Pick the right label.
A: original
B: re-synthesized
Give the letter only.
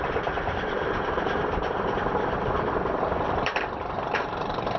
B